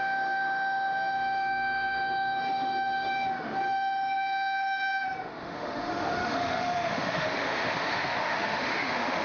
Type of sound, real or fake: fake